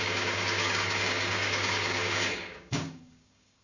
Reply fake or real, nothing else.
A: fake